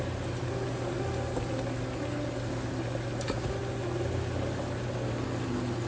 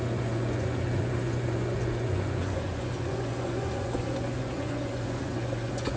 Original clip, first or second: first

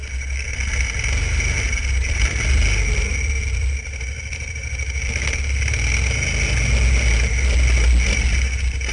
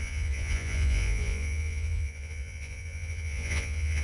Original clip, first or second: first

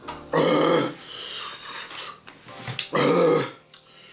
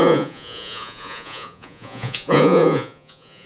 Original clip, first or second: first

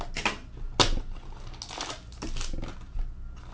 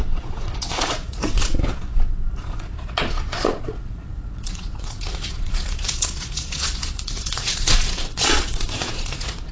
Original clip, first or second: first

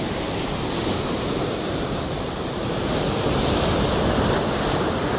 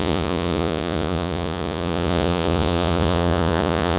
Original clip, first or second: first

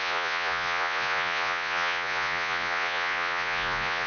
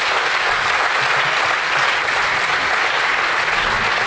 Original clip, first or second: second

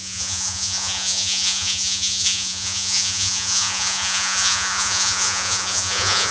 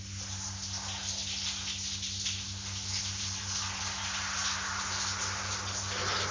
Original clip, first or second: second